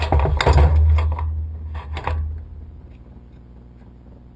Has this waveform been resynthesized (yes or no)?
no